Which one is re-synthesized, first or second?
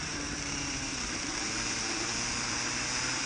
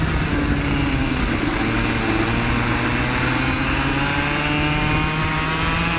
first